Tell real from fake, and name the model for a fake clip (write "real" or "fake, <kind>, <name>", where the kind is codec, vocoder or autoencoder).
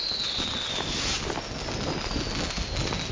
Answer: real